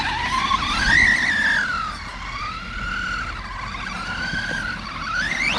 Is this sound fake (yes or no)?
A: no